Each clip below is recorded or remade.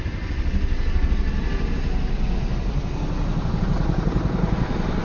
recorded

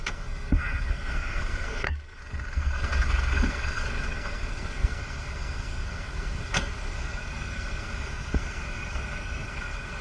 remade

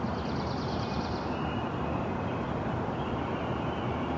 recorded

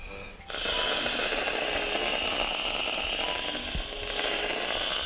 recorded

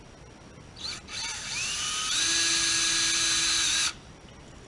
recorded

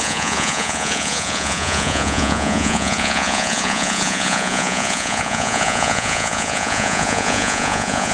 remade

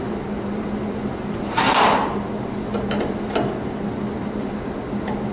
recorded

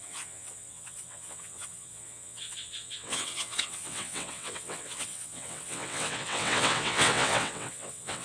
remade